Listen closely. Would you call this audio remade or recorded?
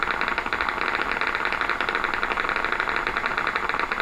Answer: recorded